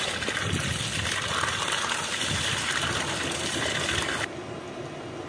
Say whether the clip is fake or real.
real